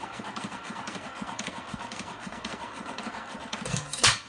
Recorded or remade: remade